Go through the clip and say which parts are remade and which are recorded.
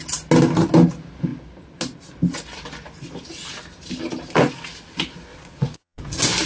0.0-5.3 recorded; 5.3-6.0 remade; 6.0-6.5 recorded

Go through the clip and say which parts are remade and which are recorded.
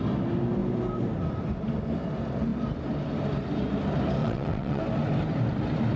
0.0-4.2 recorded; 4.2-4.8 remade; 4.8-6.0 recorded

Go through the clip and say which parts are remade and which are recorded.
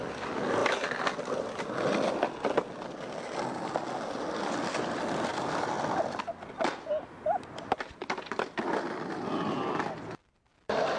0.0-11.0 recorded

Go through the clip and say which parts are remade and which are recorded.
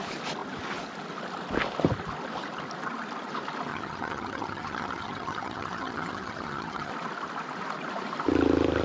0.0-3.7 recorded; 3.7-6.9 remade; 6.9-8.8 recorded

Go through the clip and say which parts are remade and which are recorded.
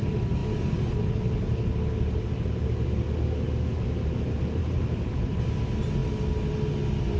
0.0-4.6 recorded; 4.6-5.5 remade; 5.5-7.2 recorded